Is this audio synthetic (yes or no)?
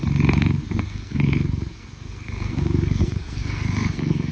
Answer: yes